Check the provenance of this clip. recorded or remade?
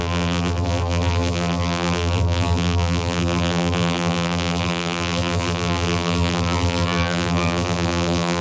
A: remade